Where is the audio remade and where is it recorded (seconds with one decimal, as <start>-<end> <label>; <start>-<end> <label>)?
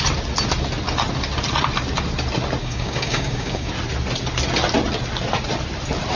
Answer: 0.0-2.6 recorded; 2.6-3.7 remade; 3.7-6.1 recorded